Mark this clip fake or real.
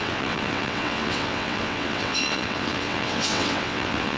fake